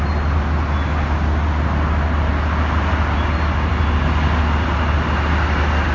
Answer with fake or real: real